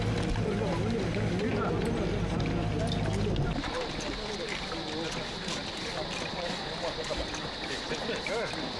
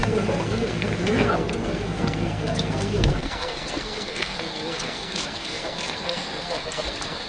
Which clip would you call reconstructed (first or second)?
second